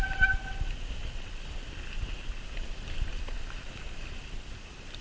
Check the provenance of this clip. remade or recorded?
recorded